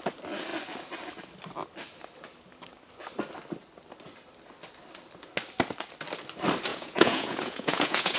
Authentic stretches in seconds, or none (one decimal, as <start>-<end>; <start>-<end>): 0.0-6.7